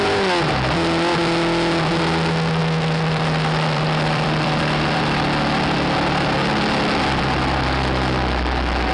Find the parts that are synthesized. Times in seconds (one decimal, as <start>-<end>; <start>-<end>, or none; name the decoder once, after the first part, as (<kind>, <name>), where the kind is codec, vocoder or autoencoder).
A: 2.6-5.0 (vocoder, BigVGAN v2)